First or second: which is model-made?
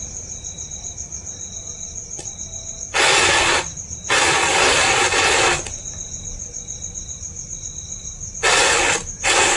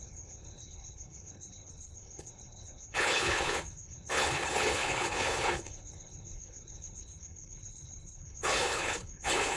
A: second